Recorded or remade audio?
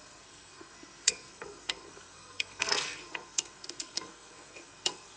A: remade